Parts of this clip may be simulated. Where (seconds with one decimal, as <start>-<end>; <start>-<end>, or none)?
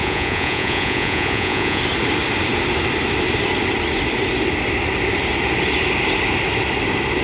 0.0-1.8